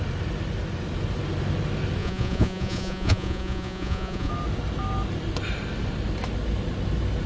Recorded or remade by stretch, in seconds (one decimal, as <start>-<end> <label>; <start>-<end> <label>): 0.0-2.0 recorded; 2.0-4.3 remade; 4.3-7.3 recorded